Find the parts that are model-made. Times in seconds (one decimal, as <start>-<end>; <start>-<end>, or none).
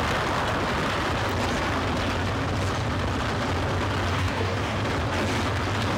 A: 4.1-4.8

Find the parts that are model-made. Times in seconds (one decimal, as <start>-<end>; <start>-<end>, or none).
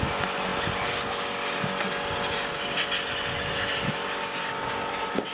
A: none